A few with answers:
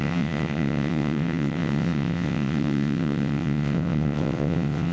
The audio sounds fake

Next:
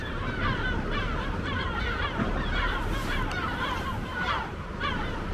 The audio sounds fake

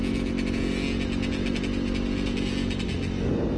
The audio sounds real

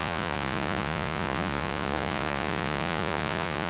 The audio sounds fake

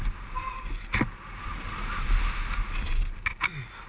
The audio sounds real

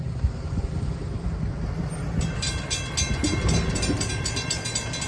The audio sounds real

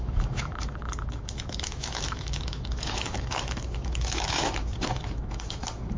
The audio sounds fake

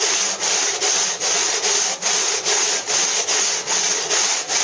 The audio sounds real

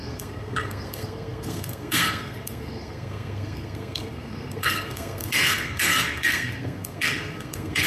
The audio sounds fake